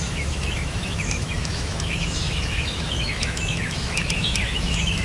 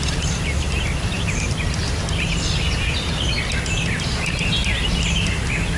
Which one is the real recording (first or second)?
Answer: second